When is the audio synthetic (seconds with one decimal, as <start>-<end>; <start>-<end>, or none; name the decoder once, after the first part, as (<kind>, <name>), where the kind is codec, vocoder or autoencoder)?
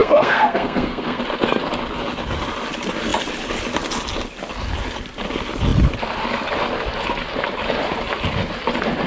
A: 0.0-1.2 (codec, SNAC)